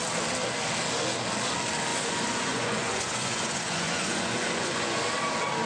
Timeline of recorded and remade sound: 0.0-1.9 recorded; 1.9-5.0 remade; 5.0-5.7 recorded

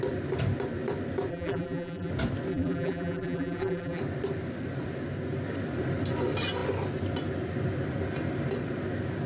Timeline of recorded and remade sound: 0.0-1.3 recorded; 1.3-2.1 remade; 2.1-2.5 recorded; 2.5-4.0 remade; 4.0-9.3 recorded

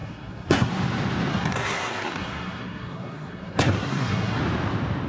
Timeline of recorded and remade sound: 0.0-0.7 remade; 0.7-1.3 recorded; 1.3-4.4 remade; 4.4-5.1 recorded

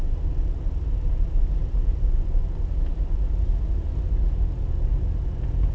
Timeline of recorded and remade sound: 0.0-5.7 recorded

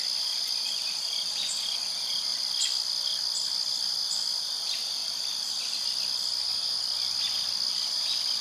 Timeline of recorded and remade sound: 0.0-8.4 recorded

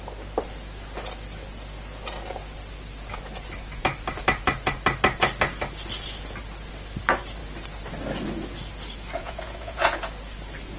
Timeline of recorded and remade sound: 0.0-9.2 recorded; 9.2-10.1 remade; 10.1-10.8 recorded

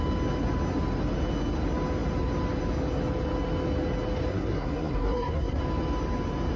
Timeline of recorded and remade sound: 0.0-4.3 recorded; 4.3-5.6 remade; 5.6-6.6 recorded

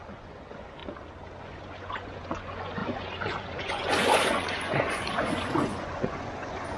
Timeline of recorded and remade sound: 0.0-0.8 remade; 0.8-1.4 recorded; 1.4-6.8 remade